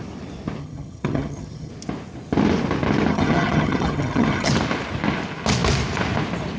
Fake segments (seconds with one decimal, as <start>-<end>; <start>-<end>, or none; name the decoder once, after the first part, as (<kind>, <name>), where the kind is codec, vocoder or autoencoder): 0.6-1.7 (vocoder, HiFi-GAN); 3.1-4.5

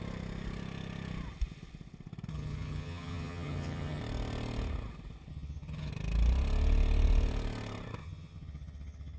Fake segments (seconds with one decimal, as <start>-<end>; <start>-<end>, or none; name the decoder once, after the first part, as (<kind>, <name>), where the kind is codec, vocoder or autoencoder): 2.3-4.0 (vocoder, HiFi-GAN); 5.3-5.9; 8.0-9.2

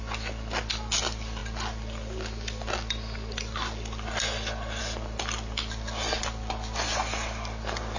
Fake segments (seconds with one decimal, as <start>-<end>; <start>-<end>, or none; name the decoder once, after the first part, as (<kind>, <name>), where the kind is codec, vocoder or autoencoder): none

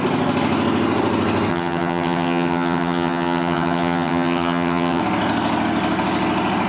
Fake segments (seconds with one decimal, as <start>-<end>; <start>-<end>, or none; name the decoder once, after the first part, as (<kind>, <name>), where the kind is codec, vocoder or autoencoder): 1.5-5.0 (vocoder, HiFi-GAN)

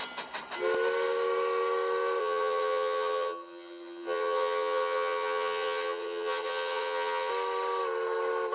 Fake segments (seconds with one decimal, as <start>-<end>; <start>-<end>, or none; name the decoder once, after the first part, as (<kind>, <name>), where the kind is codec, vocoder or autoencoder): 2.2-7.3 (vocoder, HiFi-GAN)

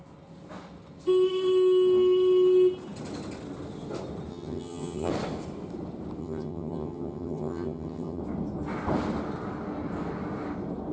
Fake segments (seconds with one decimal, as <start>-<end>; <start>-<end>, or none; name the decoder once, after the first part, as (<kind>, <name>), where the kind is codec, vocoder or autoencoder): 4.3-5.1 (vocoder, HiFi-GAN); 6.2-8.2